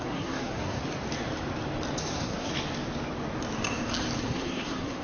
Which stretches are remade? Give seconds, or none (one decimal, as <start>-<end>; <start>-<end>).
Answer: 0.0-0.8; 2.1-2.5; 4.2-5.0